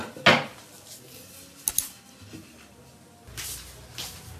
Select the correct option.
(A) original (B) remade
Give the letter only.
A